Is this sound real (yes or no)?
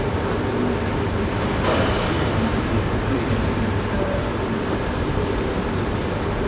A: no